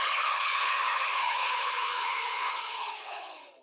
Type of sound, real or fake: fake